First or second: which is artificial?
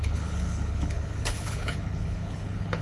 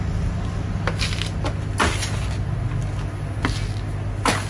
first